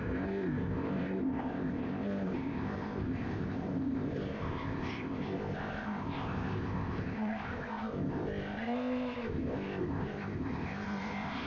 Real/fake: fake